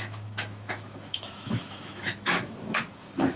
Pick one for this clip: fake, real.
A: fake